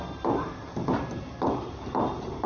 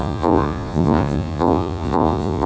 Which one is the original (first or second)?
first